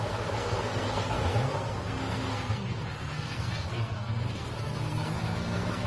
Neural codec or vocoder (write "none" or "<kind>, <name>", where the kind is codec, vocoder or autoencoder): codec, SNAC